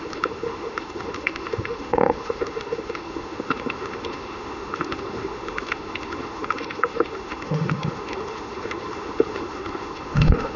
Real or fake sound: fake